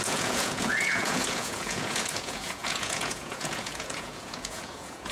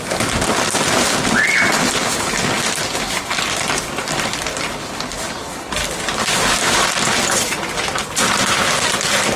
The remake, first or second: first